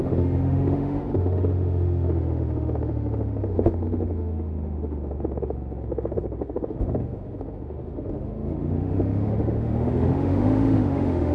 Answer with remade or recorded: remade